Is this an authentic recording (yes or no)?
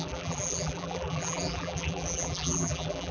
no